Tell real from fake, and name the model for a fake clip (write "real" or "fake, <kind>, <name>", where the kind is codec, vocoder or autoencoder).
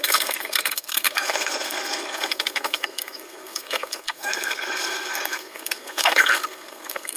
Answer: fake, codec, SNAC